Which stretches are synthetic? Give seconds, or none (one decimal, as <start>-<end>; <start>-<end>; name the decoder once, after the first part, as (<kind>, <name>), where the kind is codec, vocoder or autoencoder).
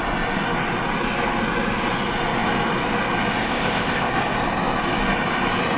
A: 3.4-4.1 (codec, ZipCodec)